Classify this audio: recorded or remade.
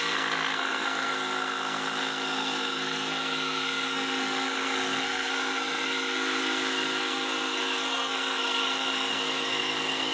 remade